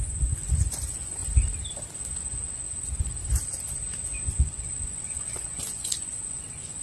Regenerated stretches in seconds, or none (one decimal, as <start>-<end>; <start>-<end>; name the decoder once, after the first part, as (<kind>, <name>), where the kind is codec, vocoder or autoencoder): 0.0-1.2 (vocoder, Vocos); 2.2-3.2; 4.3-6.8